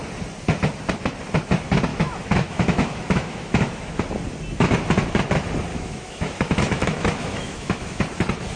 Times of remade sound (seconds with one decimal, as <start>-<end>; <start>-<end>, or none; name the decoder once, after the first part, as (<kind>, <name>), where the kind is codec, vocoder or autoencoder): 1.9-4.0 (autoencoder, DAC-VAE); 5.7-8.0